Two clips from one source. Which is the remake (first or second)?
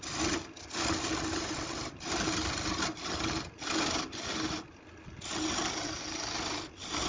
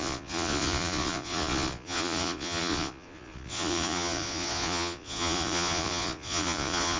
second